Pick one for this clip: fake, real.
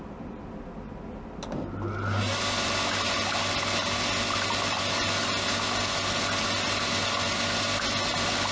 real